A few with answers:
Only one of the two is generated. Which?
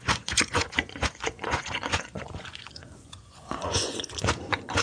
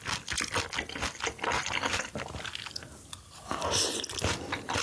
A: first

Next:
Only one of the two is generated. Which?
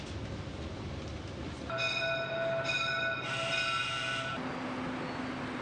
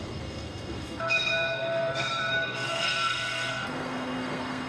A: second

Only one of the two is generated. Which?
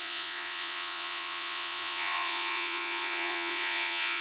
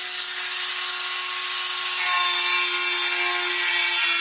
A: first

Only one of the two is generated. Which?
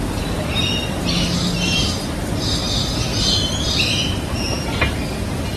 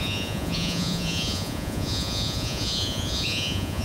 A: second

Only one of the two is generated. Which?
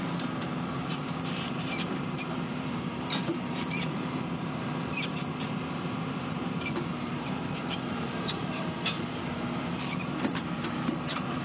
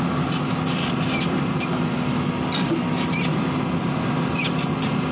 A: first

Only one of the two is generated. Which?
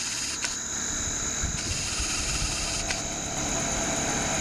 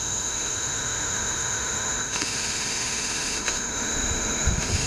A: second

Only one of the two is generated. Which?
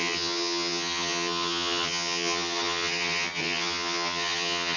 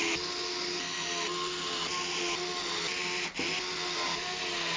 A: first